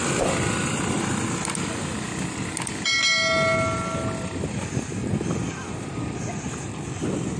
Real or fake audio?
real